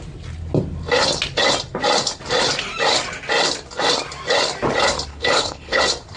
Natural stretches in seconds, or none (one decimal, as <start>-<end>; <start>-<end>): 0.0-5.1; 5.8-6.2